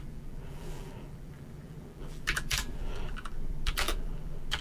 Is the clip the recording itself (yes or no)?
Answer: no